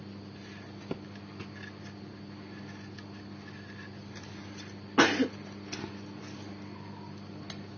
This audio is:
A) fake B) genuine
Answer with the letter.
B